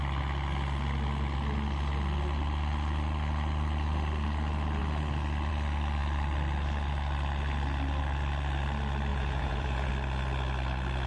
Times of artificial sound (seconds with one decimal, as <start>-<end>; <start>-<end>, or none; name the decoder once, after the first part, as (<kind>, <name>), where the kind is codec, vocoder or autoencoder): 9.1-9.9 (vocoder, Vocos)